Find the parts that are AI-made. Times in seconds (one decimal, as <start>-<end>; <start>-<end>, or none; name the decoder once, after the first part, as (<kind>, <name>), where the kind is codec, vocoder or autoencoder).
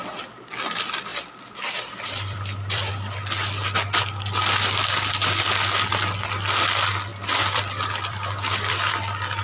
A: 1.1-2.9 (vocoder, BigVGAN v2); 7.1-8.9